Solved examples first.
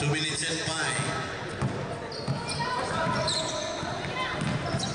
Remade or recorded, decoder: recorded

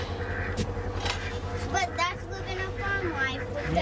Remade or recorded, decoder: recorded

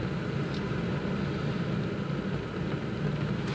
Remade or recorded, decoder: recorded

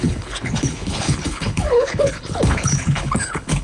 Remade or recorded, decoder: remade, codec, HILCodec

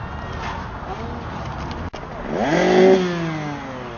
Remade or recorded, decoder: recorded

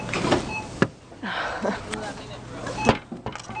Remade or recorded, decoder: recorded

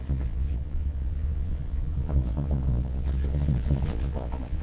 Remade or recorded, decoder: remade, vocoder, Vocos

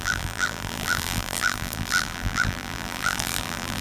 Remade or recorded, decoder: remade, vocoder, BigVGAN v2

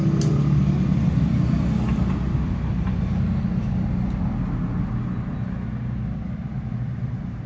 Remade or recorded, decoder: recorded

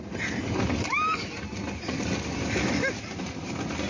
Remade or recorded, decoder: recorded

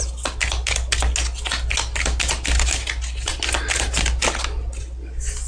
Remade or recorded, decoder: recorded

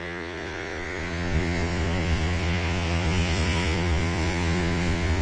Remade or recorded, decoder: remade, vocoder, Vocos